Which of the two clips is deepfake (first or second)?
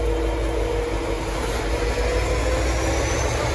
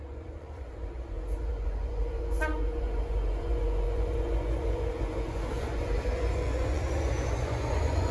second